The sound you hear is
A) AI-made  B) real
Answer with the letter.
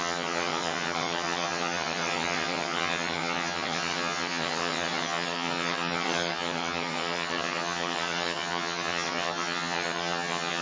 A